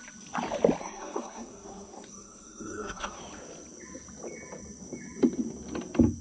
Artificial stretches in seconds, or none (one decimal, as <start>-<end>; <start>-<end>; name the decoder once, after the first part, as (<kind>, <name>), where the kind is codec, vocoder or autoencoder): 0.8-3.2 (codec, SNAC)

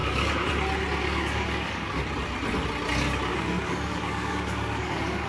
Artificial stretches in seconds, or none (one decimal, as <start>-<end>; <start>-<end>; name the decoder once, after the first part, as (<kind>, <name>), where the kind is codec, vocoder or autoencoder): 0.0-0.5 (codec, DAC); 1.0-2.0; 3.3-5.3

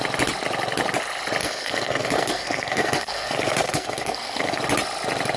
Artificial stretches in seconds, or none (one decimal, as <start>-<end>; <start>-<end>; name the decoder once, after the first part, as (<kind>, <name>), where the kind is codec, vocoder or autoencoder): 1.4-4.6 (codec, SNAC)

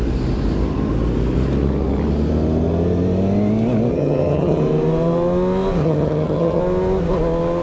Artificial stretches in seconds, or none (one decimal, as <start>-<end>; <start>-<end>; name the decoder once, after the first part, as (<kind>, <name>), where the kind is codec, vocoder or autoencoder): 3.9-4.6 (vocoder, HiFi-GAN); 5.8-6.6

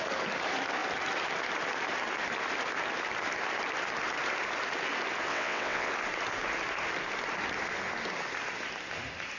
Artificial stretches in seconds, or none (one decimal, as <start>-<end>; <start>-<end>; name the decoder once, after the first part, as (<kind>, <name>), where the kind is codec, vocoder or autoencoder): 5.3-5.9 (vocoder, WaveNeXt)

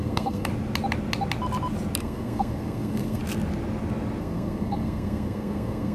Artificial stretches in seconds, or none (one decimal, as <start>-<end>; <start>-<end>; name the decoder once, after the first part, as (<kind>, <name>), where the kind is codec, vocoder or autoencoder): 0.0-0.5 (codec, SNAC); 2.0-3.2; 4.2-5.9

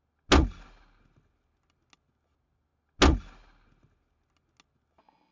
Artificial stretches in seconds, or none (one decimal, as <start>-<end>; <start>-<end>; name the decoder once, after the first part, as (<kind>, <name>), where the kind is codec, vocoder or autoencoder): none